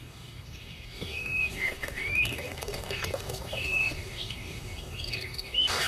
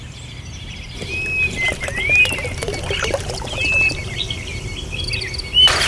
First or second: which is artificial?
first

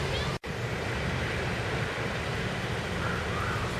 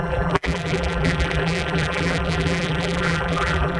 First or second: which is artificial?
second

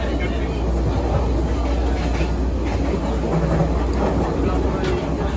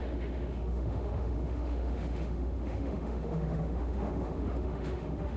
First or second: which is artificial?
second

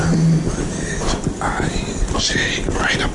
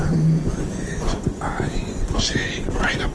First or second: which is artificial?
second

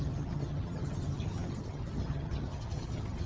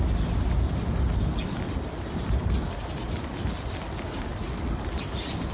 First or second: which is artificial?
first